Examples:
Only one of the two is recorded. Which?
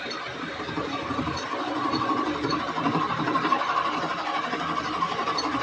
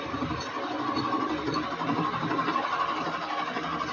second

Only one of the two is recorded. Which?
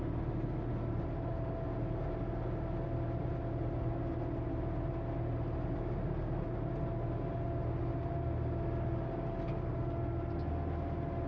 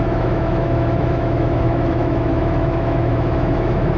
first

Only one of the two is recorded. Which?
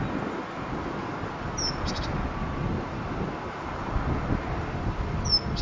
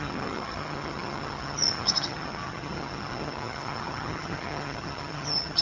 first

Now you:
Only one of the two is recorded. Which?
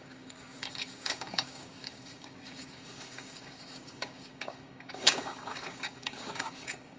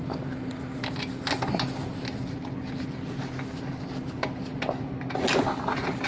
second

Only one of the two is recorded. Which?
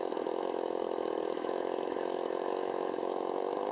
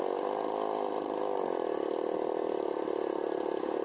second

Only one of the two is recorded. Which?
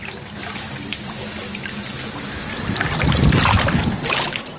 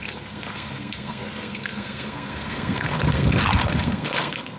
first